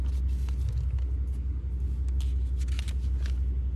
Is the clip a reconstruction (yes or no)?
no